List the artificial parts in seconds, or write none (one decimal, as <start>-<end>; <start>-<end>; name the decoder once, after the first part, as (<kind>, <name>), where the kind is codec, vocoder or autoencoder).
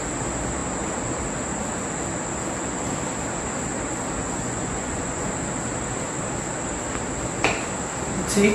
4.2-5.3 (vocoder, Vocos)